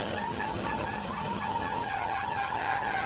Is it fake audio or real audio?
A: fake